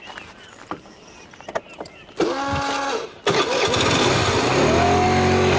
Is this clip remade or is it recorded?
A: recorded